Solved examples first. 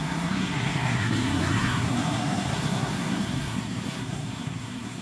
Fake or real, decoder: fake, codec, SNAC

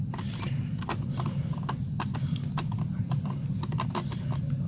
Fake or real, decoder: real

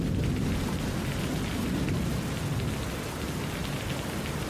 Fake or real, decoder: real